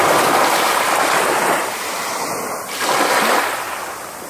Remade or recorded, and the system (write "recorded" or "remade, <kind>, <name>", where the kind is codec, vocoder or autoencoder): recorded